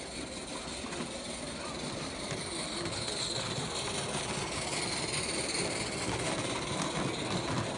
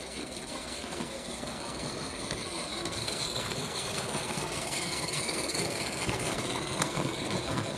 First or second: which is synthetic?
second